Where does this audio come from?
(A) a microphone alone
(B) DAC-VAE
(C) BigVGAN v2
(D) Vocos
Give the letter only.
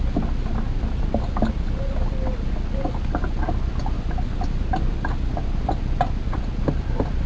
A